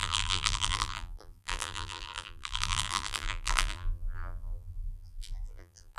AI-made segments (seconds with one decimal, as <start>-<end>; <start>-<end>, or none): 0.0-6.0